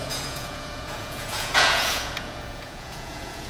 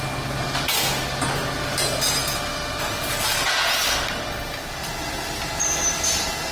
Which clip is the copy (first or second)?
first